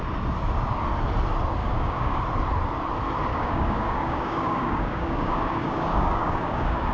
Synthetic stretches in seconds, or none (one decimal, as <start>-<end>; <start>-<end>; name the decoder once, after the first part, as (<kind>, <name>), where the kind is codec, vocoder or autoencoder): 1.6-2.2 (codec, DAC); 3.3-6.9